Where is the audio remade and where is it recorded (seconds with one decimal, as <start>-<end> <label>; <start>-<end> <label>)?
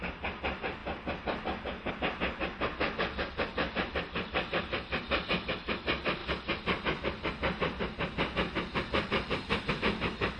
0.0-10.4 recorded